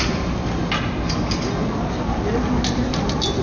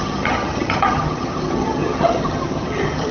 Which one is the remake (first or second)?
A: second